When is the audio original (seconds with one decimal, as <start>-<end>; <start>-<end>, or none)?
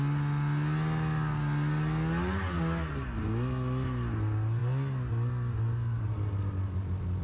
0.0-7.2